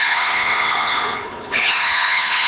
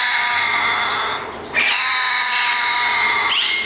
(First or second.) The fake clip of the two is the first